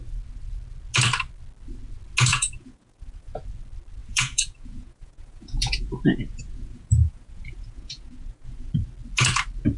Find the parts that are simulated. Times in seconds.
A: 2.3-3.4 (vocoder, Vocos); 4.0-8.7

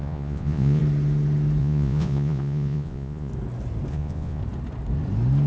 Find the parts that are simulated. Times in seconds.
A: 0.0-0.8 (vocoder, Vocos); 1.6-3.3; 3.9-4.4

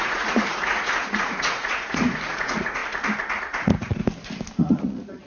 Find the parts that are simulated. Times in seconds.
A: 0.0-2.8 (vocoder, Vocos); 3.4-4.0; 4.6-5.3

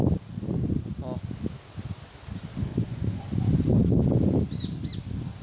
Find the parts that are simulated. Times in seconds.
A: 2.7-3.2 (vocoder, Vocos)